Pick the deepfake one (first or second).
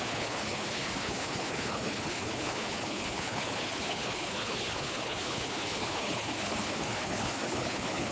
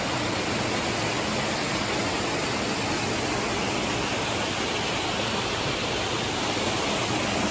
first